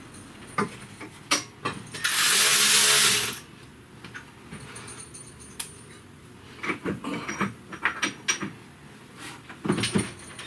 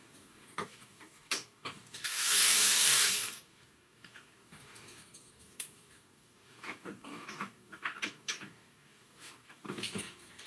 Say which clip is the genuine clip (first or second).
first